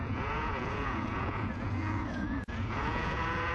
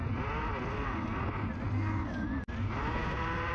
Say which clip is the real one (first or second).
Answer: second